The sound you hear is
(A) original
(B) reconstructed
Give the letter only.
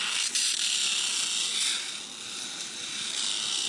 A